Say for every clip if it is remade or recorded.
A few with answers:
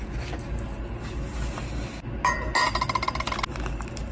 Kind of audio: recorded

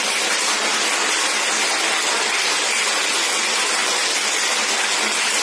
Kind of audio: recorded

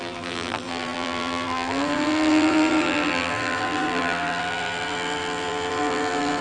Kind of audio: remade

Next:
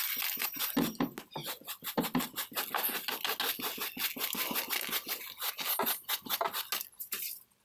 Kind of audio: recorded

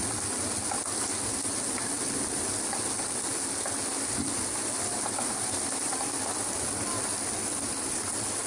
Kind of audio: recorded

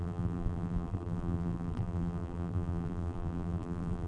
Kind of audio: remade